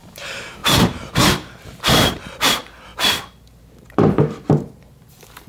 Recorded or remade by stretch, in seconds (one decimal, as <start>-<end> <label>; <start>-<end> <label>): 0.0-2.9 remade; 2.9-3.6 recorded; 3.6-5.5 remade